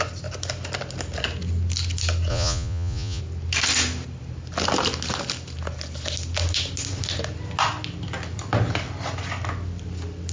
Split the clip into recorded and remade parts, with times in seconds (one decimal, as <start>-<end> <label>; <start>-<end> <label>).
0.0-2.3 recorded; 2.3-3.2 remade; 3.2-10.3 recorded